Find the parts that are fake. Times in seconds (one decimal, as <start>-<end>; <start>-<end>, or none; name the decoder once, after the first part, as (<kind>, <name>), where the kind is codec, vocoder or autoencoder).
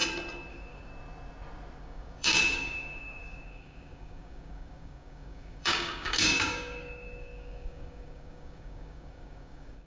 0.5-0.9 (codec, DAC); 1.8-9.9